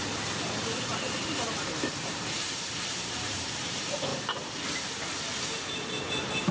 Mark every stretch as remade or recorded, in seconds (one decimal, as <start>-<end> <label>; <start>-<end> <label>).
0.0-0.9 remade; 0.9-2.0 recorded; 2.0-4.1 remade; 4.1-5.4 recorded; 5.4-6.5 remade